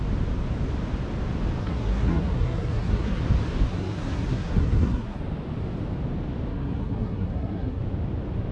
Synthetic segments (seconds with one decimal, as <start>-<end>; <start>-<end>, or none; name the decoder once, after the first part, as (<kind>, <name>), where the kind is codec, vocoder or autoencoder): 1.6-3.2 (codec, SNAC); 3.7-5.2; 6.5-7.8